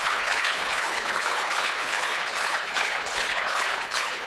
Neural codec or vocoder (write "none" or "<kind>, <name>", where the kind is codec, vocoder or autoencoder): codec, HILCodec